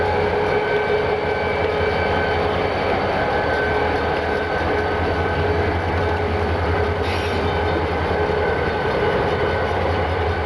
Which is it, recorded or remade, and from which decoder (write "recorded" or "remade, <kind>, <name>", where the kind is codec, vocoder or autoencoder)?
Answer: recorded